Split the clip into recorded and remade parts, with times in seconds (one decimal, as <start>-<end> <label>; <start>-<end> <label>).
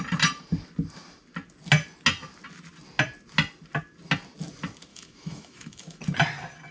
0.0-4.9 recorded; 4.9-6.0 remade; 6.0-6.7 recorded